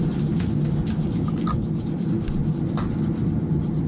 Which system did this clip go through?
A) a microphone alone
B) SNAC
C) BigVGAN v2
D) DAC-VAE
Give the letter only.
A